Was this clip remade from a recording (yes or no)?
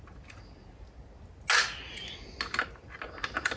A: no